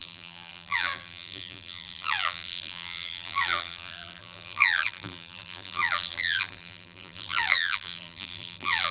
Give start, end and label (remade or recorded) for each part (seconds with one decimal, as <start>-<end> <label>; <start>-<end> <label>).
0.0-8.9 remade